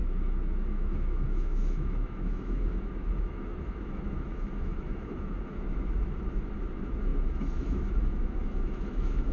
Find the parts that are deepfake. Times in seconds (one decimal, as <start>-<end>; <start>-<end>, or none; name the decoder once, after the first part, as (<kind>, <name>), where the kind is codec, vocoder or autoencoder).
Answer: 0.0-9.3 (autoencoder, DAC-VAE)